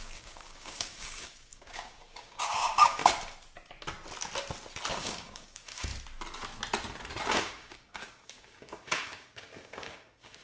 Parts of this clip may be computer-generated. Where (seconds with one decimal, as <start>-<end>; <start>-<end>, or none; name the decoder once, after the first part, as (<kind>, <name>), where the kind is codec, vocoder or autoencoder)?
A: 0.0-3.0 (codec, DAC); 4.9-5.9; 7.3-10.4